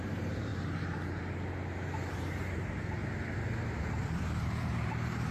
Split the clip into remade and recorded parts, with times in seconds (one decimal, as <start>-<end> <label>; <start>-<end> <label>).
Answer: 0.0-0.5 remade; 0.5-2.1 recorded; 2.1-3.0 remade; 3.0-4.0 recorded; 4.0-5.3 remade